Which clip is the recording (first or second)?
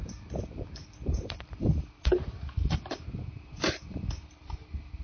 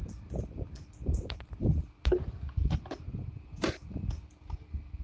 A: second